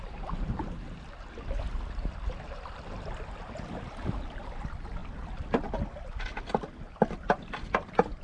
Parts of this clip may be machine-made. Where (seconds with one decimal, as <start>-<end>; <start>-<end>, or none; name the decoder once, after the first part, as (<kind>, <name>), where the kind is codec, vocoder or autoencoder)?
5.0-7.4 (vocoder, BigVGAN v2)

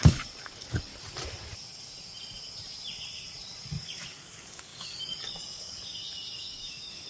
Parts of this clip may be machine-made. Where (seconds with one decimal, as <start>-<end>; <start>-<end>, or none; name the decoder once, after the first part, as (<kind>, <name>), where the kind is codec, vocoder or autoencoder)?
0.0-0.9 (codec, DAC); 3.6-7.1

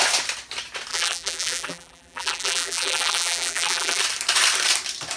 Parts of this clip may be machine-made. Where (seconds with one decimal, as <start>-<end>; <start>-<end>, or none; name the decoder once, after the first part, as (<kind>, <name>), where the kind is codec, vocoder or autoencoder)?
0.9-4.0 (vocoder, BigVGAN v2)

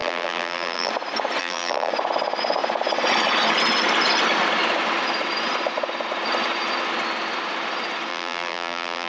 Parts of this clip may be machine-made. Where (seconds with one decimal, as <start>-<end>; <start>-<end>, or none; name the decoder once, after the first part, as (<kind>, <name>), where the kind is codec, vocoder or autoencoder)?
0.0-0.9 (vocoder, BigVGAN v2); 1.4-1.9; 8.1-9.1

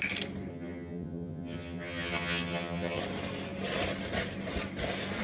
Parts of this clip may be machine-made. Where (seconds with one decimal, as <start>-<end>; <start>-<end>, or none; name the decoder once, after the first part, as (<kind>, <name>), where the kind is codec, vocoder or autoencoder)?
0.5-3.0 (vocoder, HiFi-GAN)

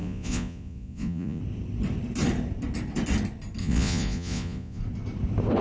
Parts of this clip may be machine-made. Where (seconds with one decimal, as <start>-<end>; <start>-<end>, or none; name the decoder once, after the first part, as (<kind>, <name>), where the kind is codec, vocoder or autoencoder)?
0.0-1.4 (vocoder, Vocos); 3.6-4.8

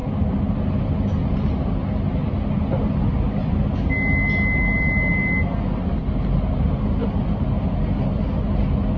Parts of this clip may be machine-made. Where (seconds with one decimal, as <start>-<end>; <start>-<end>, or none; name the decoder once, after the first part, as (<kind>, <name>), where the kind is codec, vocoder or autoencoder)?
none

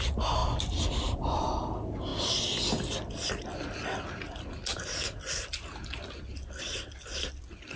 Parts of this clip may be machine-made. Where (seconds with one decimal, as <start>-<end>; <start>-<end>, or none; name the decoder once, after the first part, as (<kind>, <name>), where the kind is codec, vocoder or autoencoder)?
none